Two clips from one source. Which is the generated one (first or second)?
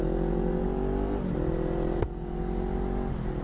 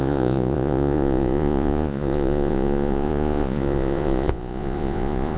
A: second